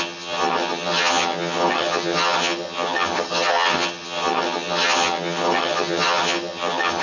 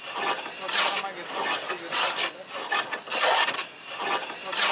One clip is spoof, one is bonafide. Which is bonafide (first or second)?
second